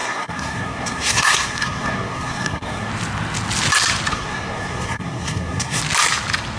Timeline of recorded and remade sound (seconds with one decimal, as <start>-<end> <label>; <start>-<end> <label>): 0.0-2.9 remade; 2.9-4.1 recorded; 4.1-5.8 remade; 5.8-6.6 recorded